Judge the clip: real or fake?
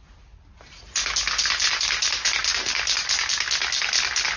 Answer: real